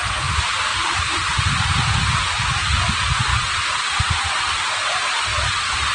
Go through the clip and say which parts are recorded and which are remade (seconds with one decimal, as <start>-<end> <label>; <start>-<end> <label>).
0.0-5.9 recorded